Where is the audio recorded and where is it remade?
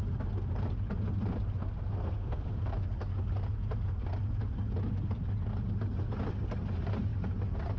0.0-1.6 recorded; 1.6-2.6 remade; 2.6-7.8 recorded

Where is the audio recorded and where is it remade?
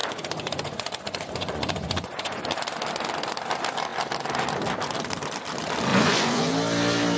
0.0-2.4 remade; 2.4-5.9 recorded; 5.9-6.5 remade; 6.5-7.2 recorded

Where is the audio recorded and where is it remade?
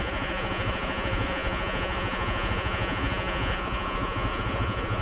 0.0-5.0 remade